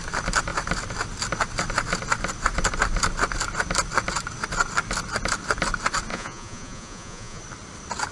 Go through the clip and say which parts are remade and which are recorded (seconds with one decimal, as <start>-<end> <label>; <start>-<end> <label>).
0.0-6.1 recorded; 6.1-7.4 remade; 7.4-8.1 recorded